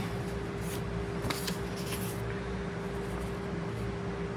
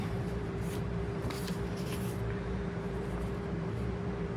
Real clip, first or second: first